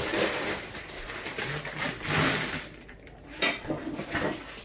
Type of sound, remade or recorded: recorded